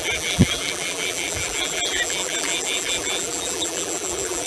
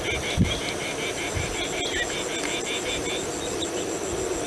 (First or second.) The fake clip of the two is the first